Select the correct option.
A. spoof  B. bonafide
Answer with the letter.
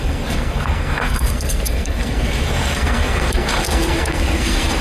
A